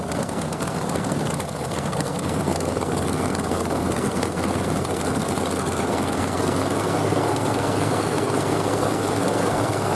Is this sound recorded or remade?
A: remade